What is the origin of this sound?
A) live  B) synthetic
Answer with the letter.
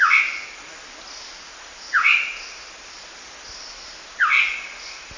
A